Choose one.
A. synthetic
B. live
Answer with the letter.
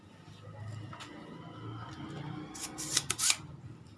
B